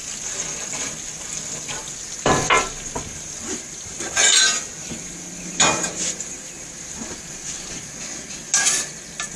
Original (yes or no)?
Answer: yes